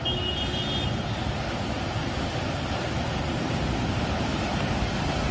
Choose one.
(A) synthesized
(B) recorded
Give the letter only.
B